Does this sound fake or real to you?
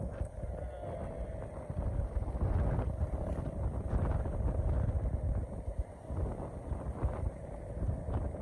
real